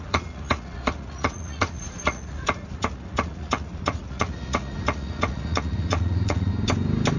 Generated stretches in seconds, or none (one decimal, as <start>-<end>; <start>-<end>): 0.0-6.5